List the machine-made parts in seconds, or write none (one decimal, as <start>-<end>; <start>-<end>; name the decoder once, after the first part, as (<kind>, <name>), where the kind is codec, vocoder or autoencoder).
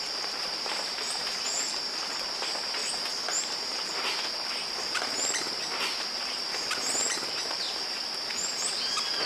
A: 0.0-2.8 (vocoder, BigVGAN v2); 3.4-9.3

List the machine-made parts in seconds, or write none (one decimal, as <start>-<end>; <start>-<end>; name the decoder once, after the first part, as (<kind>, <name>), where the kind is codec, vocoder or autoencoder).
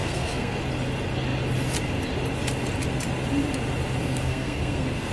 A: 0.0-0.6 (codec, SNAC); 4.0-5.1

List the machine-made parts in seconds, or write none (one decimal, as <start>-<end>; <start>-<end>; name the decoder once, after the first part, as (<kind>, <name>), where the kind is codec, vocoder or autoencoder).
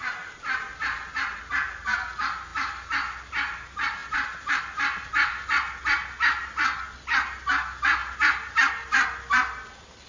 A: 4.0-4.6 (vocoder, BigVGAN v2)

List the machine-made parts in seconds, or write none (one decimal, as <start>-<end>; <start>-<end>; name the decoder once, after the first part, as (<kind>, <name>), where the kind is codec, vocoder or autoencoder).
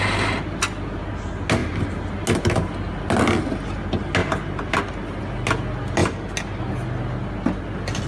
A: none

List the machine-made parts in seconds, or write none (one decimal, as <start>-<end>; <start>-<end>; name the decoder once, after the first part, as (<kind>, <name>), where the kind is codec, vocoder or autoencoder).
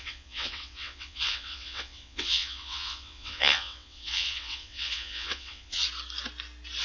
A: 0.0-5.8 (vocoder, WaveNeXt)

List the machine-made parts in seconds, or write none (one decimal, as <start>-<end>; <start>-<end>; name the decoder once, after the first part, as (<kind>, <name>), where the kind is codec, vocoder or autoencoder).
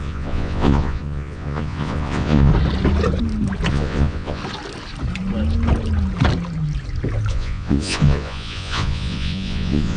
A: 0.0-2.5 (vocoder, Vocos); 3.7-4.4; 7.3-10.0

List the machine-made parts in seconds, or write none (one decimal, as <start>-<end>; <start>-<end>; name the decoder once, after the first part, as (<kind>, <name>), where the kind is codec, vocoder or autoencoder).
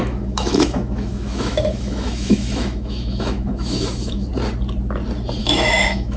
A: 0.0-4.3 (autoencoder, DAC-VAE); 5.4-6.2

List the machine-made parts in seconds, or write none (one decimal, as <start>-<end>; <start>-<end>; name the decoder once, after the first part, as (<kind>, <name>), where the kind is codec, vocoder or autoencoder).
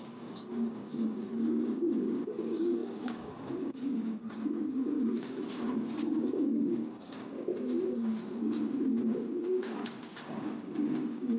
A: 0.0-7.5 (codec, DAC); 10.1-11.4